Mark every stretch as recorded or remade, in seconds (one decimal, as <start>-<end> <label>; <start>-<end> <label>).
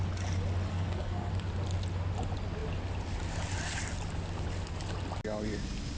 0.0-0.7 recorded; 0.7-1.3 remade; 1.3-6.0 recorded